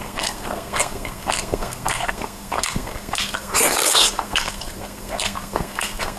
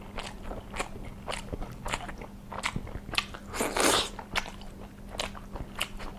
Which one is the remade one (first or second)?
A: first